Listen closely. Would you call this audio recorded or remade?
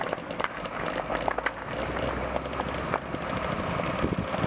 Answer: recorded